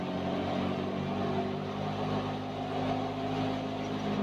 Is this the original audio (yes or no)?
yes